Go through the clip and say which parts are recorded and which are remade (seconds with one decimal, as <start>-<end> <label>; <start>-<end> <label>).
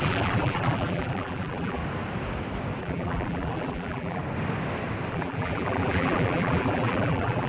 0.0-1.8 remade; 1.8-2.8 recorded; 2.8-4.2 remade; 4.2-5.1 recorded; 5.1-7.5 remade